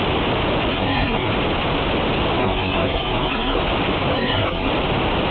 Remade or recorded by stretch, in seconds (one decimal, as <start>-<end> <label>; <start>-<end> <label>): 0.0-0.7 recorded; 0.7-1.3 remade; 1.3-2.4 recorded; 2.4-3.6 remade; 3.6-4.1 recorded; 4.1-4.7 remade; 4.7-5.3 recorded